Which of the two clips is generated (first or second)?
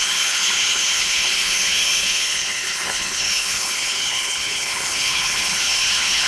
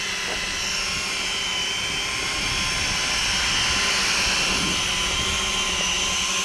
first